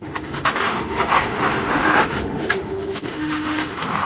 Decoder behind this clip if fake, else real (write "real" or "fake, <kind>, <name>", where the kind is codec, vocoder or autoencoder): fake, autoencoder, DAC-VAE